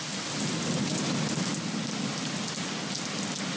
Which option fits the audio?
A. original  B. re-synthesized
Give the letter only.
A